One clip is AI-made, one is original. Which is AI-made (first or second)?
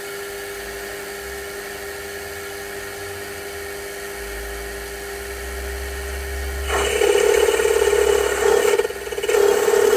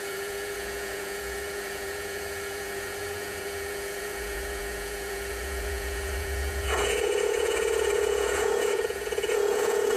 second